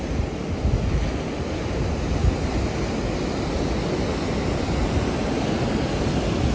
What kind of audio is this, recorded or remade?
recorded